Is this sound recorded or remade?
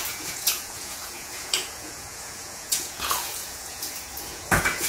remade